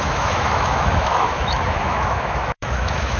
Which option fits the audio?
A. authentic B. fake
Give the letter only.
B